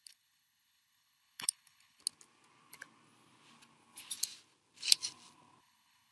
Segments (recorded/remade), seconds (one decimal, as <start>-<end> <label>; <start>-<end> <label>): 0.0-2.0 remade; 2.0-5.6 recorded; 5.6-6.1 remade